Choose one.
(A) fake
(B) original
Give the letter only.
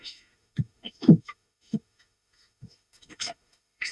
A